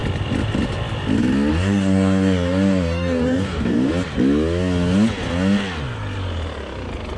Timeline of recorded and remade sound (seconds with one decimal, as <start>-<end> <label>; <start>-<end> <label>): 0.0-1.5 recorded; 1.5-3.9 remade; 3.9-7.2 recorded